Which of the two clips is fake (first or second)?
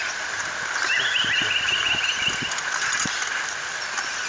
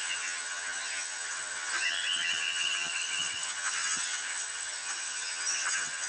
second